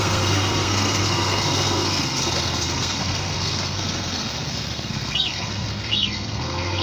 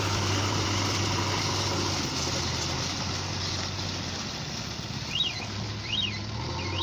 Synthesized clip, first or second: first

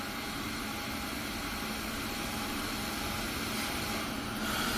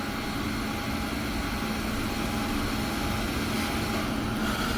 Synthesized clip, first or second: first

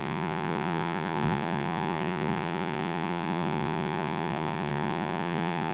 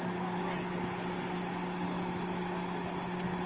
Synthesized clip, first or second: first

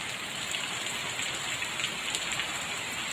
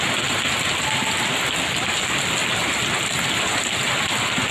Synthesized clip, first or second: first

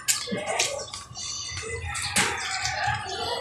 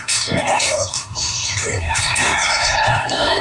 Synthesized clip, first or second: second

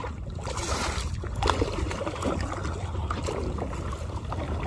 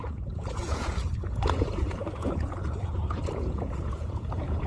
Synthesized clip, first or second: second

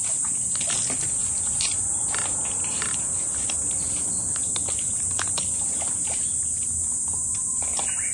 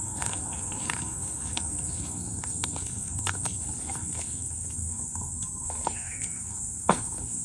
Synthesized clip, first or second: second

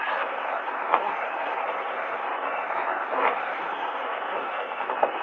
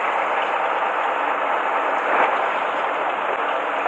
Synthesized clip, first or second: first